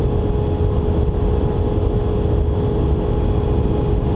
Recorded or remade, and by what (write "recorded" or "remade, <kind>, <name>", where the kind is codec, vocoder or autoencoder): recorded